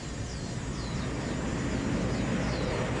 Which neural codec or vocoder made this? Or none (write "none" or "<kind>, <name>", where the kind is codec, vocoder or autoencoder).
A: none